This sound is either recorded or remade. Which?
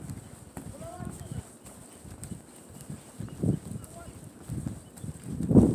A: recorded